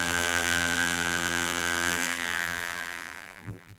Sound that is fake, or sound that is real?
fake